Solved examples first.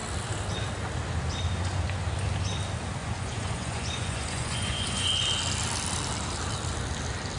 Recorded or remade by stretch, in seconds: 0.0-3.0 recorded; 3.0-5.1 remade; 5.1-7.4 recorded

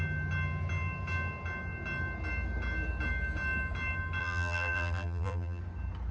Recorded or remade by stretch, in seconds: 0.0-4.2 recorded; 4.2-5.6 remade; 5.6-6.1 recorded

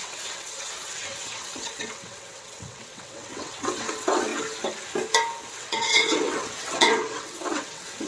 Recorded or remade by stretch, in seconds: 0.0-4.3 remade; 4.3-5.5 recorded; 5.5-8.1 remade